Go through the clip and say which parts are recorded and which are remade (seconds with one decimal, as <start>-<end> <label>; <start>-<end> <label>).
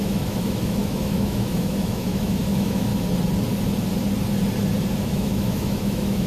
0.0-2.9 remade; 2.9-4.9 recorded; 4.9-6.3 remade